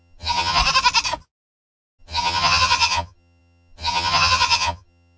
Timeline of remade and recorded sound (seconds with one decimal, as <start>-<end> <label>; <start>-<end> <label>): 0.0-0.6 remade; 0.6-2.0 recorded; 2.0-5.2 remade